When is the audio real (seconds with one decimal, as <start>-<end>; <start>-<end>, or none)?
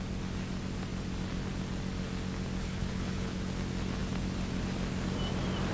0.0-2.6; 3.4-5.7